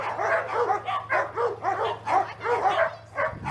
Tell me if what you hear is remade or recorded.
recorded